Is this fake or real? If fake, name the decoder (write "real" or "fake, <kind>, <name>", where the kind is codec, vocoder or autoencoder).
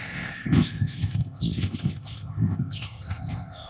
fake, codec, ZipCodec